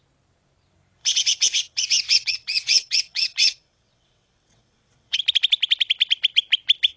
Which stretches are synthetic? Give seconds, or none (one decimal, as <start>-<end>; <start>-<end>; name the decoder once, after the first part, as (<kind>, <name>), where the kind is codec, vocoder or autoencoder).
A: 1.0-5.2 (vocoder, WaveNeXt)

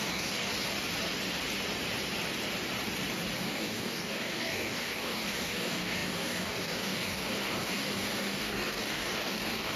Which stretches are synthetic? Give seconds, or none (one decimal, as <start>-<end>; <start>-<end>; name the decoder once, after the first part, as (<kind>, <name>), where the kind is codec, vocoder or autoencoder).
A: 0.0-0.5 (codec, DAC); 3.4-9.8